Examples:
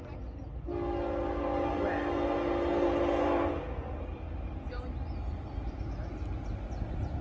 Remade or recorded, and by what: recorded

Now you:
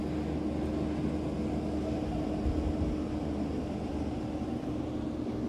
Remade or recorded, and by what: recorded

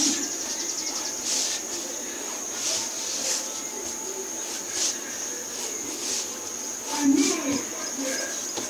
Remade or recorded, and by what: recorded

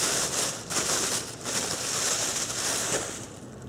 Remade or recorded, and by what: remade, vocoder, BigVGAN v2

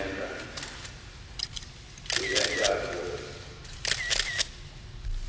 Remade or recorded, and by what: recorded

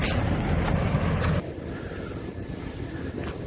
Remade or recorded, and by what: recorded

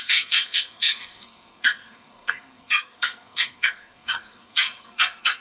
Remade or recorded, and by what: remade, codec, SNAC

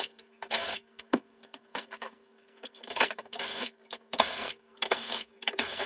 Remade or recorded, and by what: remade, codec, SNAC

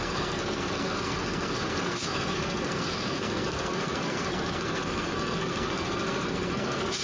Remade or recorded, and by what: remade, codec, SNAC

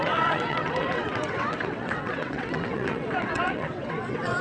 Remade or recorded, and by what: remade, vocoder, WaveNeXt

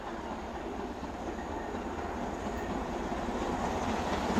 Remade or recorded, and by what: recorded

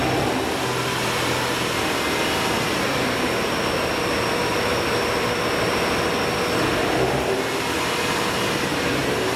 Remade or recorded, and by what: recorded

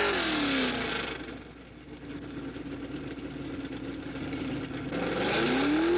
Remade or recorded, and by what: recorded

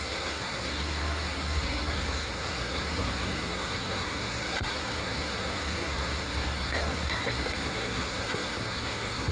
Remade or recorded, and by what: remade, codec, SNAC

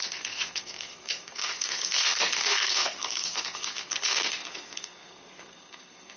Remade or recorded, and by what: remade, codec, SNAC